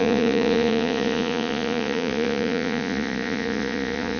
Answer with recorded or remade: remade